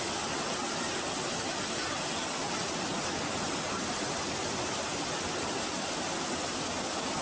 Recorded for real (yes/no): yes